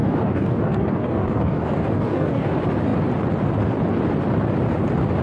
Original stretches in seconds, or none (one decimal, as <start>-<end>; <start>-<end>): 2.5-5.2